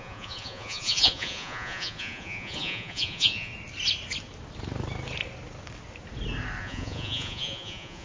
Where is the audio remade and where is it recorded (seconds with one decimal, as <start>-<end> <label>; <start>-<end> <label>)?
0.0-3.5 remade; 3.5-6.6 recorded; 6.6-8.0 remade